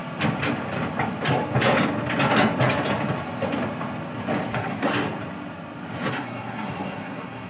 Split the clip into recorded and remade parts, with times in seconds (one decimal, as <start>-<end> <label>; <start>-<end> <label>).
0.0-4.5 recorded; 4.5-4.9 remade; 4.9-6.1 recorded; 6.1-7.5 remade